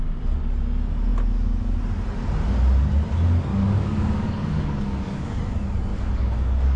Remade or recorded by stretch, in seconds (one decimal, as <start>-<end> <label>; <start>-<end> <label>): 0.0-3.5 recorded; 3.5-5.4 remade; 5.4-5.9 recorded; 5.9-6.8 remade